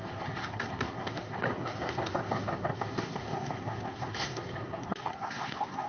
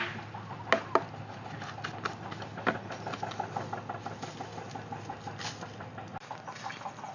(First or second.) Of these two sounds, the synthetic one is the first